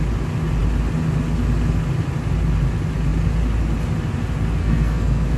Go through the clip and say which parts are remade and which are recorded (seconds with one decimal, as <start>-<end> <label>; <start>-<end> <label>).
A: 0.0-4.6 recorded; 4.6-5.4 remade